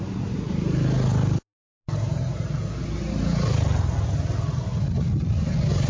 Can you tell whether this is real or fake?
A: real